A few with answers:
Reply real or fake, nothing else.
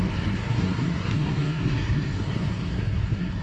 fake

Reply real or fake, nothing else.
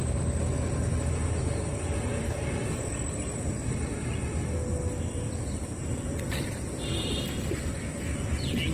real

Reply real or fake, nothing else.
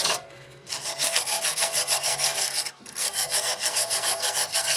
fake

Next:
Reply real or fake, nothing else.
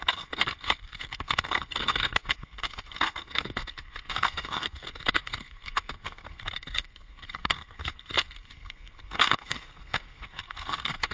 fake